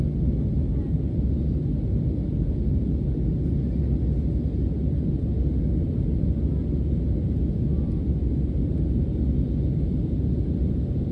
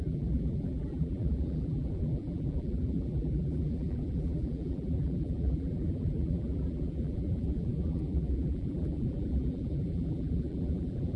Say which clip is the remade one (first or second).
second